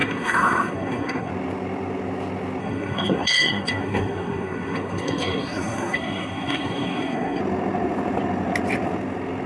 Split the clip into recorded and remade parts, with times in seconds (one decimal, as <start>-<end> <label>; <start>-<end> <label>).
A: 0.0-1.3 remade; 1.3-2.6 recorded; 2.6-7.4 remade; 7.4-9.5 recorded